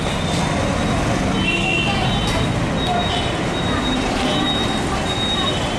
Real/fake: real